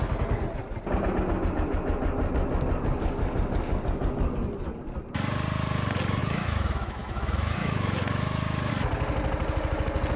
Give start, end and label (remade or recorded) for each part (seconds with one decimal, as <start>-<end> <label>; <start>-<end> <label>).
0.0-6.2 recorded; 6.2-8.7 remade; 8.7-10.2 recorded